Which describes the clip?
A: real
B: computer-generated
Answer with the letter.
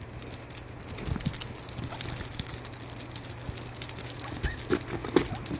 A